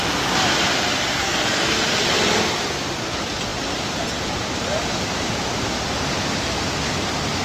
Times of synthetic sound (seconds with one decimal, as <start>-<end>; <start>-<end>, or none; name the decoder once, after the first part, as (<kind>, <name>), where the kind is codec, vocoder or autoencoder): 1.2-1.8 (codec, SNAC)

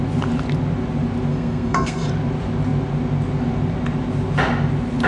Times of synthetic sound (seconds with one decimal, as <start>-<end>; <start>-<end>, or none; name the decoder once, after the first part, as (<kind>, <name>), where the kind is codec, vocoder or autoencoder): 1.3-2.1 (codec, SNAC)

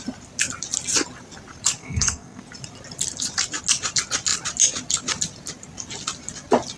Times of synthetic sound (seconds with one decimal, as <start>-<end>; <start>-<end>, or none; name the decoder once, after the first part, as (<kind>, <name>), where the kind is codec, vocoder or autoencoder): 1.8-2.4 (codec, SNAC)

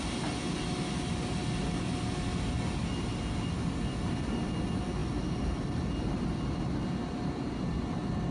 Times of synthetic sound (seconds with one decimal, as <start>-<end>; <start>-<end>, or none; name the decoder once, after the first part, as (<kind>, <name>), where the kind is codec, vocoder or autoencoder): none

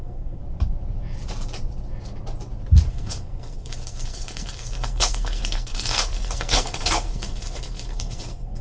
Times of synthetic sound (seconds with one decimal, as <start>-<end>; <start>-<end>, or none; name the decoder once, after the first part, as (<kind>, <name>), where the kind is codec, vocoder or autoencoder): 0.0-0.4 (codec, SNAC); 2.9-8.6